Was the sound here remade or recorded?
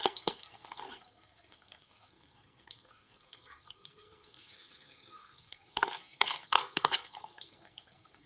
remade